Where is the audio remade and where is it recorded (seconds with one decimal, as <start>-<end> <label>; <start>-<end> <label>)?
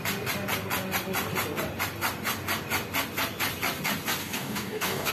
0.0-4.2 recorded; 4.2-5.1 remade